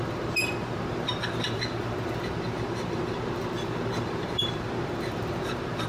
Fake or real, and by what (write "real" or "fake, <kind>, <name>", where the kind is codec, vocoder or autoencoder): fake, vocoder, BigVGAN v2